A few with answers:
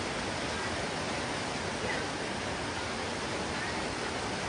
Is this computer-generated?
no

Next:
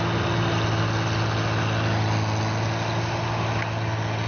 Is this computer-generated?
no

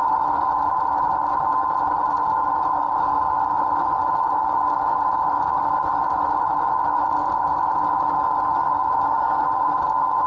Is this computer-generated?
no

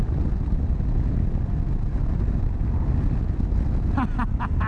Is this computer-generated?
no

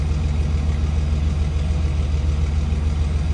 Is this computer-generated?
no